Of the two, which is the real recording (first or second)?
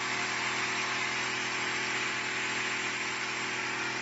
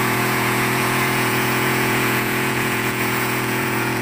first